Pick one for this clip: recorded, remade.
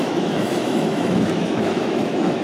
remade